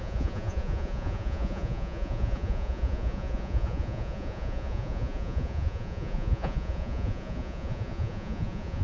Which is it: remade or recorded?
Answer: remade